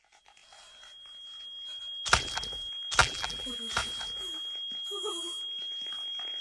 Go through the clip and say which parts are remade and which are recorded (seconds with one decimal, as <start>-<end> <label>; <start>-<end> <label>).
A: 0.0-3.0 recorded; 3.0-3.6 remade; 3.6-6.4 recorded